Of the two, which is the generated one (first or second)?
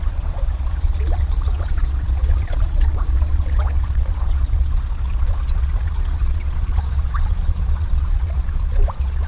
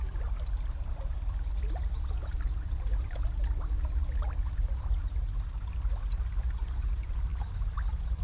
first